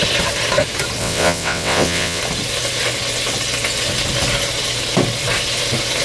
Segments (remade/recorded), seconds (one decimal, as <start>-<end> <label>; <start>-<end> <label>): 0.0-1.0 recorded; 1.0-2.2 remade; 2.2-6.0 recorded